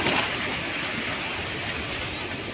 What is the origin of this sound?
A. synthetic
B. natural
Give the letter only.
B